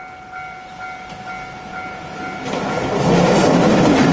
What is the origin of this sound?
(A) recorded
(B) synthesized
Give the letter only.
A